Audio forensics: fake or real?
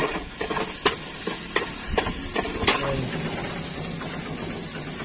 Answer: real